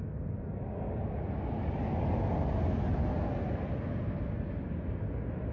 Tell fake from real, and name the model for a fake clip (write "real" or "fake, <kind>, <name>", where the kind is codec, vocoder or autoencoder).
real